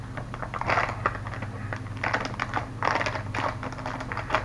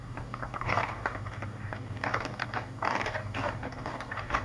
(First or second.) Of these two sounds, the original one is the first